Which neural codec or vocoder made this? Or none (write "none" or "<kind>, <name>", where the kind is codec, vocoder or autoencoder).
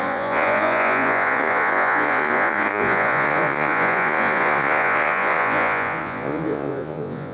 vocoder, Vocos